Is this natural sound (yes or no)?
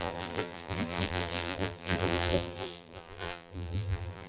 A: no